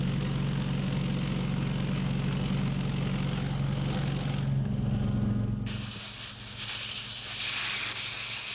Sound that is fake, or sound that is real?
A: real